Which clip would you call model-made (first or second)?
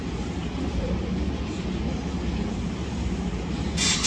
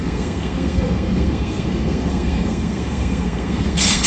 second